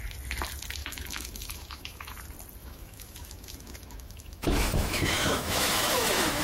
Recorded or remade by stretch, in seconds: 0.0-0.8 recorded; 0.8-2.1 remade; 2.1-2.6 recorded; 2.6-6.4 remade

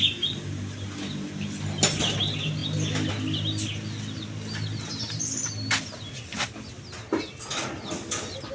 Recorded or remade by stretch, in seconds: 0.0-8.5 recorded

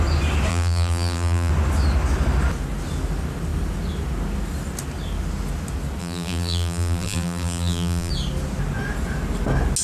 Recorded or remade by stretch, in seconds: 0.0-0.5 recorded; 0.5-1.5 remade; 1.5-6.0 recorded; 6.0-8.1 remade; 8.1-9.8 recorded